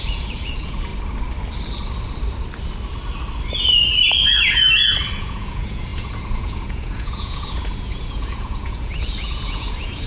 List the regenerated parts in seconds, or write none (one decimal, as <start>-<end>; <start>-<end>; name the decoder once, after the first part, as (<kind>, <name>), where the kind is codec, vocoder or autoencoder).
0.0-0.9 (vocoder, Vocos); 5.2-10.1